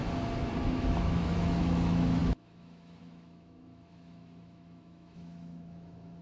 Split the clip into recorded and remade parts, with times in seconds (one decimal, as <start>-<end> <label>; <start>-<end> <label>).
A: 0.0-0.7 recorded; 0.7-6.2 remade